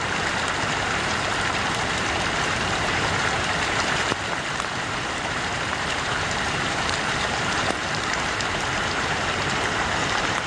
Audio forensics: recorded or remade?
remade